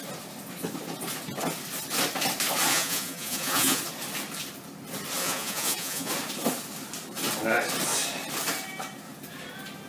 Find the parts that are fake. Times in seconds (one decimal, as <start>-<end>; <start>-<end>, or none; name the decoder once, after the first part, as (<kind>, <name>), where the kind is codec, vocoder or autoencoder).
2.7-3.8 (vocoder, Vocos); 5.2-6.1